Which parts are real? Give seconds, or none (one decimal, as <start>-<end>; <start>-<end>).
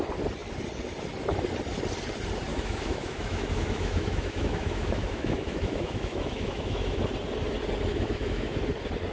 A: 0.0-2.5; 7.0-7.9; 8.6-9.1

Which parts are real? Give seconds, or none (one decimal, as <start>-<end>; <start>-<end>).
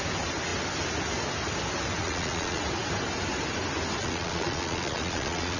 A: 0.0-2.0; 2.6-4.0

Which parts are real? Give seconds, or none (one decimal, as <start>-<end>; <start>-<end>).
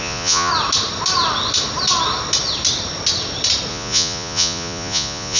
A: 0.5-3.7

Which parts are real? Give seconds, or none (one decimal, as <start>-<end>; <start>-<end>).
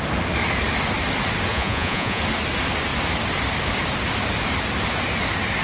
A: 0.0-1.5; 2.2-5.6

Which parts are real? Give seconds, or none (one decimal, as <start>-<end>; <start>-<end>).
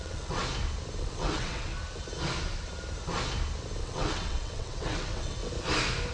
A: 0.4-1.0; 1.7-3.8; 5.4-6.1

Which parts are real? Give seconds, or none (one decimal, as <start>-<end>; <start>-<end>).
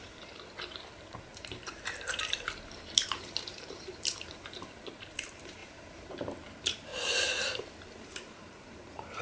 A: 6.9-7.4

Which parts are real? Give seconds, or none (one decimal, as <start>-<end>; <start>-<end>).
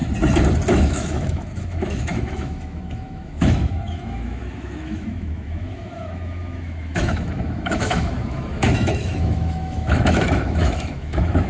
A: 0.0-0.7